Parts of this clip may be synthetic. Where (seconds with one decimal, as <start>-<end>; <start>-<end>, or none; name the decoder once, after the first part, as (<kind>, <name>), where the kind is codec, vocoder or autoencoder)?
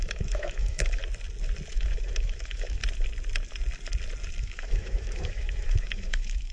0.0-1.0 (autoencoder, DAC-VAE); 1.7-2.8; 4.4-6.5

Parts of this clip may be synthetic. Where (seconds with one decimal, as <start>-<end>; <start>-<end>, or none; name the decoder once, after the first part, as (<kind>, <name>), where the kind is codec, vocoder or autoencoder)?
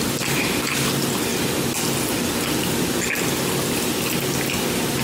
none